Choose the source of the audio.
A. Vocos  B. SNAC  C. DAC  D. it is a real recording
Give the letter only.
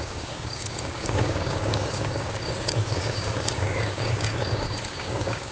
C